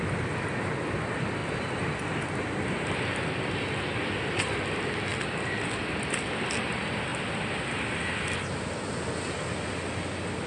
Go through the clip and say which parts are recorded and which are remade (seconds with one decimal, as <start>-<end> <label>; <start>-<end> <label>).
0.0-10.5 recorded